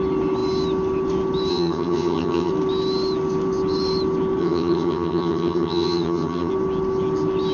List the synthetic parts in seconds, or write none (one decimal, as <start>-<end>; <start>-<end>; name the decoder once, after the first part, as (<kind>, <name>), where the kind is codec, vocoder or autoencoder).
1.5-2.5 (vocoder, HiFi-GAN); 4.4-6.5